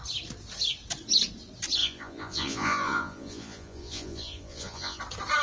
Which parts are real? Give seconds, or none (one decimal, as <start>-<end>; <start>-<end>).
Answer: 0.0-1.8; 5.0-5.4